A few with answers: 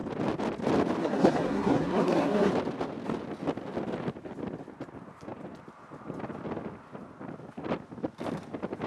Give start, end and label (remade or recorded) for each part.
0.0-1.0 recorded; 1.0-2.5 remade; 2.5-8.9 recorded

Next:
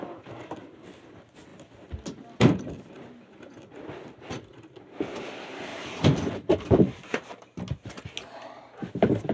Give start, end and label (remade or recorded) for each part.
0.0-5.7 recorded; 5.7-7.4 remade; 7.4-9.3 recorded

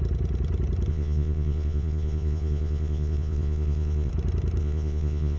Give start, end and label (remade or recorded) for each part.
0.0-0.9 recorded; 0.9-4.1 remade; 4.1-4.6 recorded; 4.6-5.4 remade

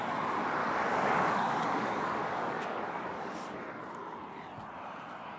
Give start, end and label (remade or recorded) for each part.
0.0-0.6 recorded; 0.6-3.8 remade; 3.8-5.4 recorded